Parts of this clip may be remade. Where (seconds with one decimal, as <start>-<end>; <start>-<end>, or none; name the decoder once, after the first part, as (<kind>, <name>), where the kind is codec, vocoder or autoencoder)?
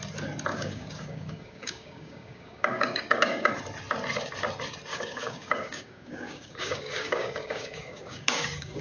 0.5-3.5 (codec, DAC); 4.9-8.8